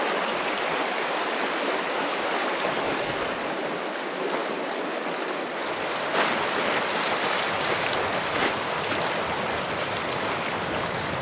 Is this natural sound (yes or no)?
yes